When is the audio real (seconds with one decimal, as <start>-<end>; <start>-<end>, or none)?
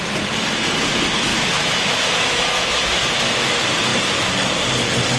0.0-1.3; 3.5-5.2